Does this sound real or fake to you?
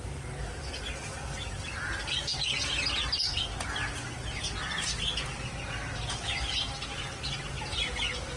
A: real